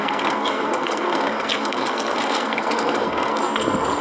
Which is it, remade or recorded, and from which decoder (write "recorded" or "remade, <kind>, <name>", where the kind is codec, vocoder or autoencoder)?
remade, codec, SNAC